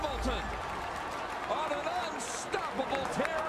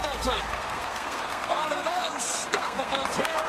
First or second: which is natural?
first